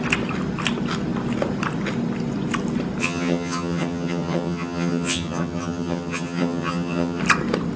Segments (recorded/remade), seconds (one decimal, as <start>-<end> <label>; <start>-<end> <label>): 0.0-3.0 recorded; 3.0-7.2 remade; 7.2-7.8 recorded